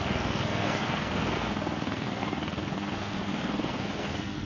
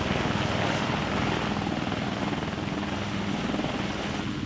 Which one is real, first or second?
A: second